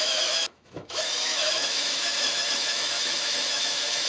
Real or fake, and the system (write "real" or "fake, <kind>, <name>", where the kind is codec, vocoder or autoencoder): fake, autoencoder, DAC-VAE